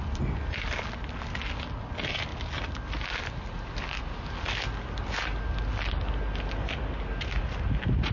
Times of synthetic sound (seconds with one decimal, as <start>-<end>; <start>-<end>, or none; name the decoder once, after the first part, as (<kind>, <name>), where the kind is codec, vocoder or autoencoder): none